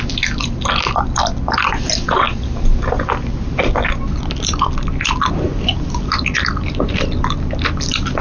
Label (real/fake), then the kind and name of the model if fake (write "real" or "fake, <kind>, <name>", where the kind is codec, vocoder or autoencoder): real